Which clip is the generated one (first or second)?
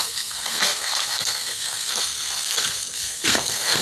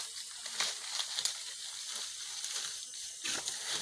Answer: first